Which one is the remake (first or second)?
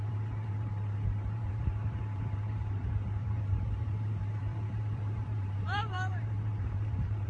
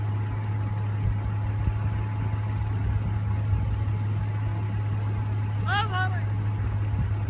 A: first